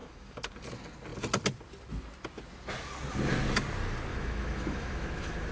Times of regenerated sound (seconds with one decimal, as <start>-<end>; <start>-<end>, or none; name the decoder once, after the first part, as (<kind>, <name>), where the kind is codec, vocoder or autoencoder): 0.0-0.5 (autoencoder, DAC-VAE); 4.1-5.5

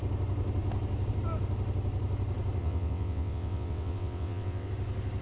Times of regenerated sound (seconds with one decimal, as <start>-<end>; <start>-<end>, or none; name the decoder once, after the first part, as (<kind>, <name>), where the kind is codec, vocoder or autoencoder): 2.6-4.7 (vocoder, WaveNeXt)

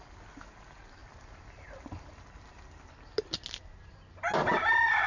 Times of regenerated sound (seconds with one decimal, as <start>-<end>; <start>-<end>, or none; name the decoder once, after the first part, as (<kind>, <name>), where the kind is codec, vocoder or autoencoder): none

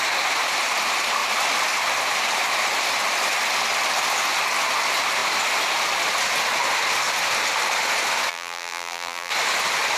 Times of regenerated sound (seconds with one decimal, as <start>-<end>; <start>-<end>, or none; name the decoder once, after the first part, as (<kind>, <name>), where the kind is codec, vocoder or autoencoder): 8.3-9.3 (vocoder, BigVGAN v2)

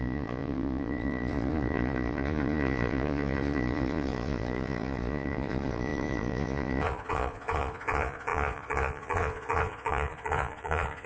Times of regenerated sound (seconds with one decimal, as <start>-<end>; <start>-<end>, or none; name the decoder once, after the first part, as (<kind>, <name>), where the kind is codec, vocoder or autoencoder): 0.0-11.1 (vocoder, Vocos)